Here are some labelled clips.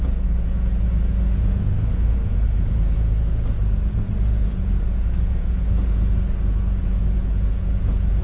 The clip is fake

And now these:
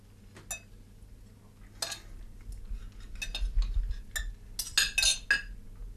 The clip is real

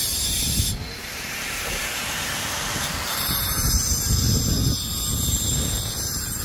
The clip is fake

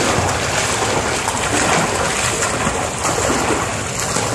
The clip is real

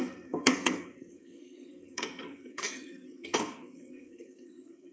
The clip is fake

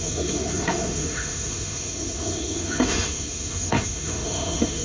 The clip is fake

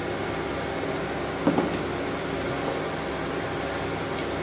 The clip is real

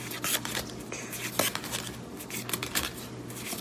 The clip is real